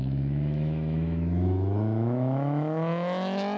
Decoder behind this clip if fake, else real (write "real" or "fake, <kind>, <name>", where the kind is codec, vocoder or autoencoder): fake, autoencoder, DAC-VAE